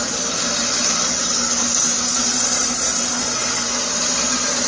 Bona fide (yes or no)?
yes